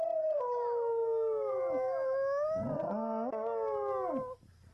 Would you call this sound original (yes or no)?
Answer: yes